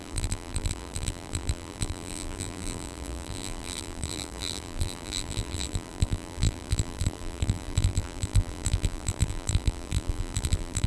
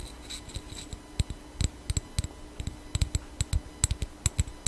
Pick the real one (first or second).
second